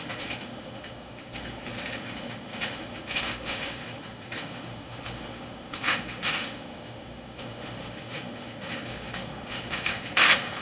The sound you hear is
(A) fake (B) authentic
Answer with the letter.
A